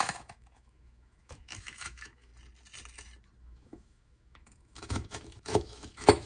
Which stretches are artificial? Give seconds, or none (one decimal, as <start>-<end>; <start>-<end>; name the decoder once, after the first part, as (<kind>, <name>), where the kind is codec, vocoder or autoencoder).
0.0-2.3 (autoencoder, DAC-VAE); 3.4-6.3